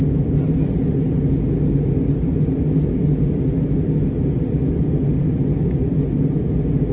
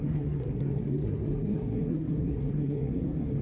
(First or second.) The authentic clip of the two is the first